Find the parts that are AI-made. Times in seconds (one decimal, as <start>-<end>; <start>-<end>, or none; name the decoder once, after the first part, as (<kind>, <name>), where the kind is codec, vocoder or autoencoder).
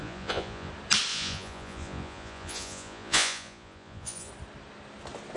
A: 0.0-0.7 (vocoder, Vocos); 1.1-4.3